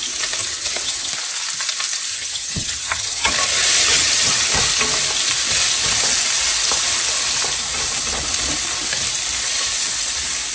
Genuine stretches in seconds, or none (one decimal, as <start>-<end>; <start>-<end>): 0.0-0.4; 1.1-2.1; 3.3-3.8; 4.5-10.5